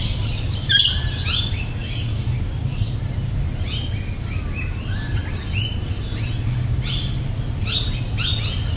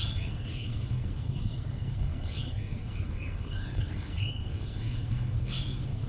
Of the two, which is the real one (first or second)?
first